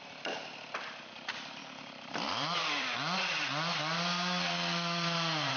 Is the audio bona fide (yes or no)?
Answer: no